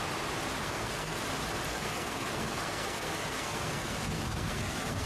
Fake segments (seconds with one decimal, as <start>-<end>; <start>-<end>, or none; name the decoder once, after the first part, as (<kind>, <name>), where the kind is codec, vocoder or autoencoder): 0.6-1.2 (codec, SNAC); 1.7-5.1